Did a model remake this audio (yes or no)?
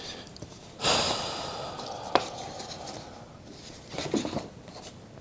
no